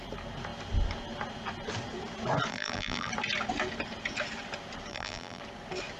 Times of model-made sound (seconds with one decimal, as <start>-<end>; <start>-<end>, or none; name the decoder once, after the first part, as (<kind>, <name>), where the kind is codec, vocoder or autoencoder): 2.5-3.1 (vocoder, BigVGAN v2); 4.9-5.4